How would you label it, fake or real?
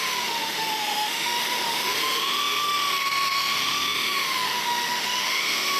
fake